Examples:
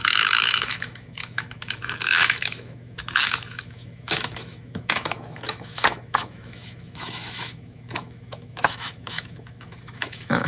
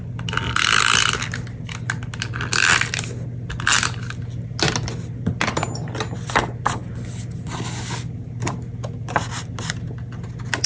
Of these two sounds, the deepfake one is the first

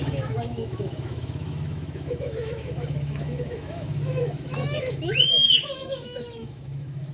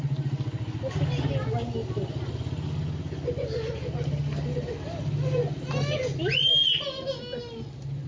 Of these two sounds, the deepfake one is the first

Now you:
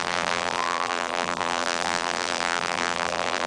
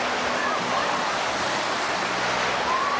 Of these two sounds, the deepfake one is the first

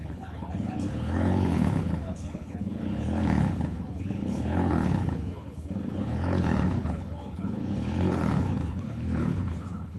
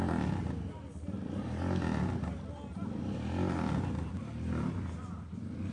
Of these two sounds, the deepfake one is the first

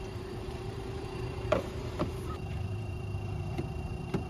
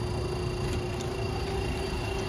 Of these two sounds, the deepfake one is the first